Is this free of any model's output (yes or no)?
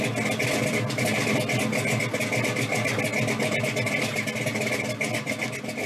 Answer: yes